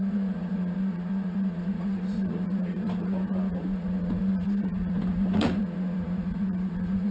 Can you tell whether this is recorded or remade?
remade